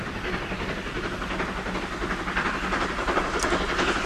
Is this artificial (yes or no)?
no